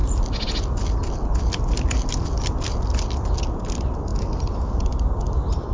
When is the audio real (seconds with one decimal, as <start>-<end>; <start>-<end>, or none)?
0.0-5.7